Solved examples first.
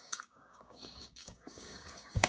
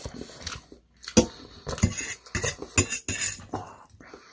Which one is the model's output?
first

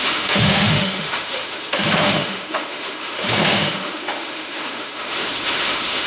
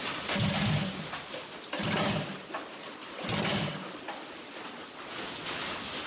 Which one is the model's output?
first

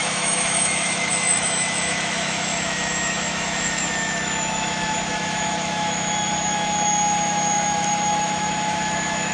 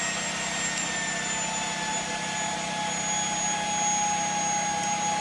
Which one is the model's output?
first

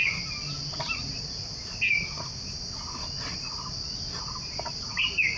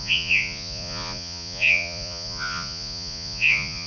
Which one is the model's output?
second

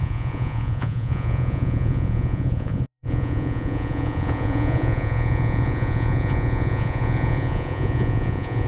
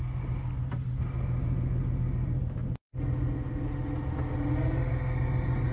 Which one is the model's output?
first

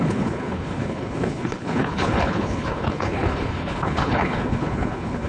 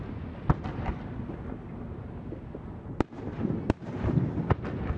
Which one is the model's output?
first